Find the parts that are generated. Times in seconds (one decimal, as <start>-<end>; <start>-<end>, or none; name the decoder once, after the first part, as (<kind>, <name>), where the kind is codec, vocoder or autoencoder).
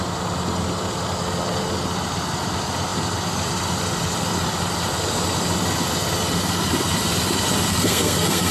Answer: 7.7-8.5 (codec, SNAC)